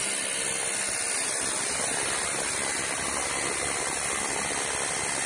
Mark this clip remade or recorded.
recorded